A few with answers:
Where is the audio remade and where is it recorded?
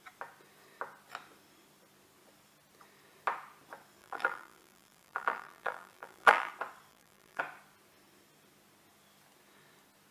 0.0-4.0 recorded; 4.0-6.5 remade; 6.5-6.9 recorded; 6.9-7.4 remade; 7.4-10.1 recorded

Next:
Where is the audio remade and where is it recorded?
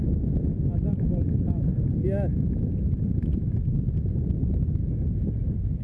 0.0-5.8 recorded